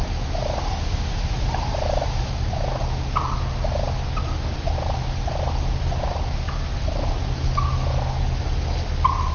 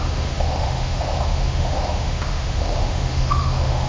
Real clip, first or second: first